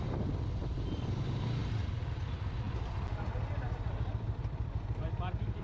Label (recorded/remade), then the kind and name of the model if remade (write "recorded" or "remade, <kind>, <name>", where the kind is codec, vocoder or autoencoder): recorded